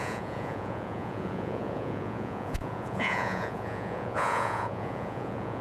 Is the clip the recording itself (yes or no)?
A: no